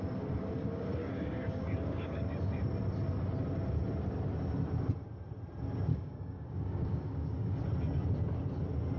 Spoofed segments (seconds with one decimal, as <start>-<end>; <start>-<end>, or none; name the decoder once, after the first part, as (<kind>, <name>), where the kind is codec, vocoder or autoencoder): 0.9-2.3 (codec, DAC); 5.9-7.6